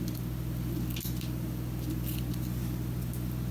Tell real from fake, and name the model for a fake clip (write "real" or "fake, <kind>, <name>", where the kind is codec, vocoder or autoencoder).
real